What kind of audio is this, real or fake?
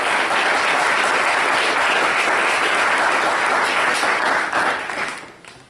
real